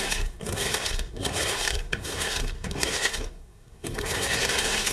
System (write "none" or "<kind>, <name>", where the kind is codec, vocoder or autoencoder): codec, SNAC